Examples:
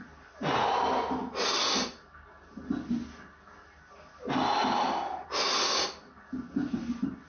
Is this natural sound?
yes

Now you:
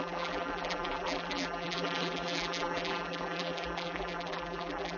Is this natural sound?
no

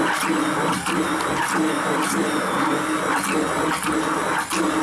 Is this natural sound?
yes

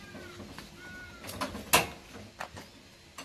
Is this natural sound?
yes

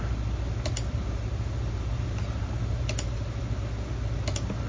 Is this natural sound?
yes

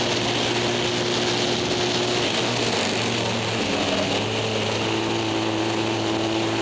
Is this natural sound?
yes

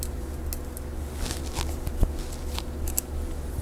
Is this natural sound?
yes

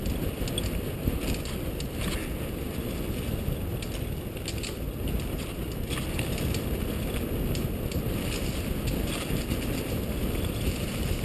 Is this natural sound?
yes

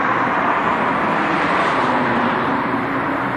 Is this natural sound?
no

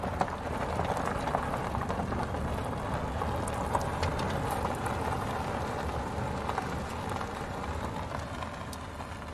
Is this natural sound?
yes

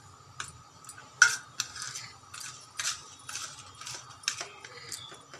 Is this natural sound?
yes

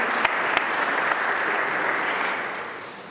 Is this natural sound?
no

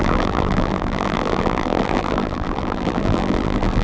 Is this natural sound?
no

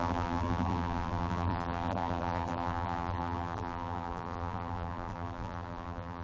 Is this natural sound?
no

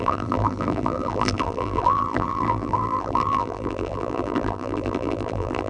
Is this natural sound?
no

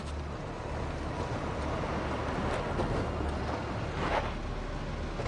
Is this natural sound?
yes